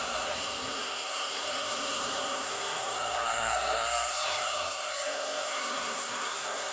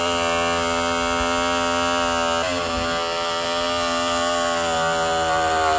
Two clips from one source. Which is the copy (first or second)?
first